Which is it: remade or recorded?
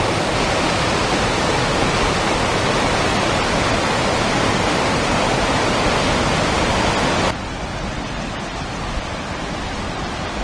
recorded